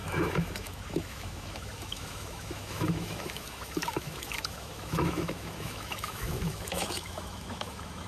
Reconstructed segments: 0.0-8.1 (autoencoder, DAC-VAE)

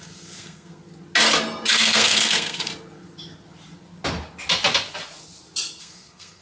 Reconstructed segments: 0.0-0.8 (codec, SNAC); 1.7-2.7; 5.8-6.4